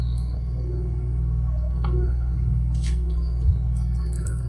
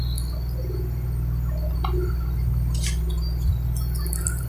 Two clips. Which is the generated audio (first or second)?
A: first